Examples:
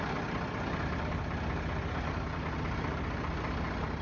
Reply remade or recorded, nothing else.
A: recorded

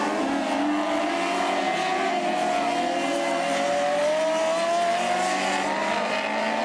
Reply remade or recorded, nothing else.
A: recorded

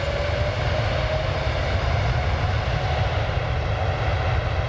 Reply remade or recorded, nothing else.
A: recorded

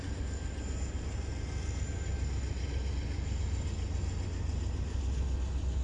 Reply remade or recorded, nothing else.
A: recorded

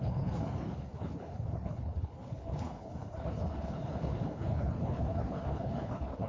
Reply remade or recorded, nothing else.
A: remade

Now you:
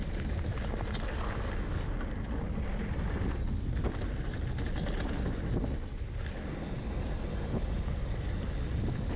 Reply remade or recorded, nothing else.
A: recorded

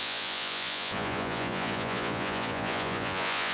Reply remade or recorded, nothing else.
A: remade